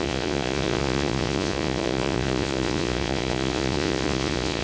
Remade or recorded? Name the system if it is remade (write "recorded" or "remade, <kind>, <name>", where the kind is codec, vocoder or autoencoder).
remade, vocoder, Vocos